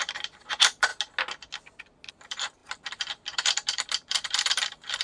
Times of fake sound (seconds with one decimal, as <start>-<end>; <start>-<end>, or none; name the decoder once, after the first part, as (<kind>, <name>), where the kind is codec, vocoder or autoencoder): 0.0-0.9 (vocoder, BigVGAN v2); 2.1-5.0